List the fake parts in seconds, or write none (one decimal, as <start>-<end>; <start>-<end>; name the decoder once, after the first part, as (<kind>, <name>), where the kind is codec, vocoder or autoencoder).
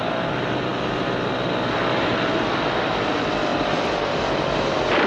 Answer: 3.5-5.1 (vocoder, BigVGAN v2)